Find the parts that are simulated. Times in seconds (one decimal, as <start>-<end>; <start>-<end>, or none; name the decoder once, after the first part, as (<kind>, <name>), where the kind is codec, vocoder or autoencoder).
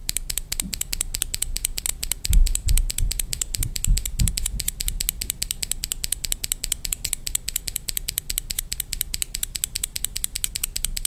0.0-0.9 (vocoder, BigVGAN v2); 1.9-4.3; 7.2-8.3